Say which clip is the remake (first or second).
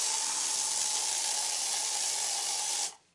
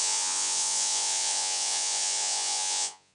second